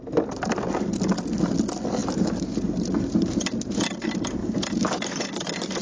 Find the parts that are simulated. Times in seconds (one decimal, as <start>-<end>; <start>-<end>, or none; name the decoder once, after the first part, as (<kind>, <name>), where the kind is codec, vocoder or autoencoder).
4.4-5.8 (vocoder, BigVGAN v2)